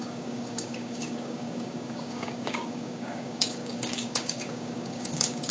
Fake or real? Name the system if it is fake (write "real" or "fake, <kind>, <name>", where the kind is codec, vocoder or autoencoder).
fake, codec, DAC